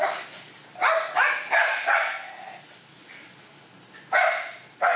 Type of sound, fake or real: real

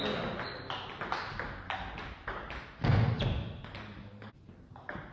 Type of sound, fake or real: real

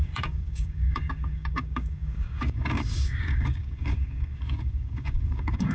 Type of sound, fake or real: fake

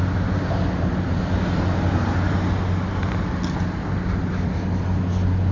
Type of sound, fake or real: real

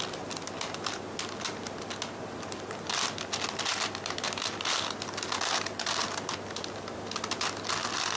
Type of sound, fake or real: real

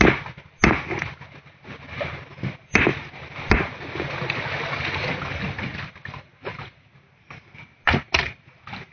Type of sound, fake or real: real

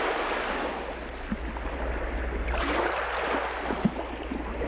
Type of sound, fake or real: real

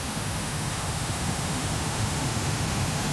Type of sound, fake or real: fake